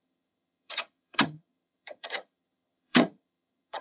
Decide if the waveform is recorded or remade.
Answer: remade